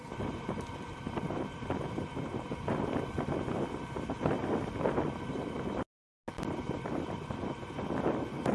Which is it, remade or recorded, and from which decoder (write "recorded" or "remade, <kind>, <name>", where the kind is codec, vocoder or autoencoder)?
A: recorded